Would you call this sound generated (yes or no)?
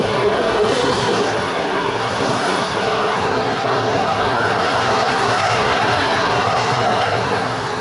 yes